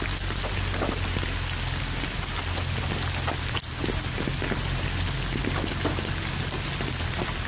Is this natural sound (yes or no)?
yes